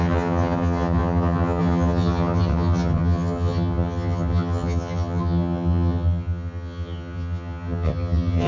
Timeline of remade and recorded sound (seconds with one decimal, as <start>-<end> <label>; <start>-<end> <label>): 0.0-8.5 remade